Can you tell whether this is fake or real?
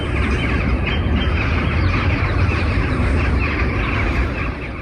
real